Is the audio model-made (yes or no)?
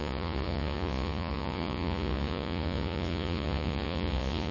yes